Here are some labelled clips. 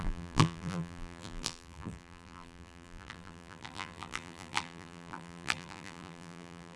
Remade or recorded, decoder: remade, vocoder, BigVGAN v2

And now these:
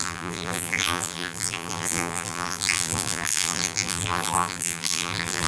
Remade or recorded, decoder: remade, vocoder, BigVGAN v2